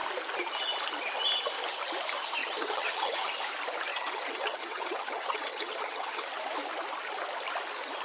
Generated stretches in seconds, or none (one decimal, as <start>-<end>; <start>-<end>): 2.4-3.3; 3.9-6.3